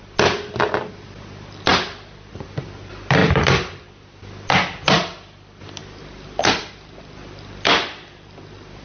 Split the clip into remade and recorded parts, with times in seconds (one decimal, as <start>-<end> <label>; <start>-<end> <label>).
0.0-8.8 recorded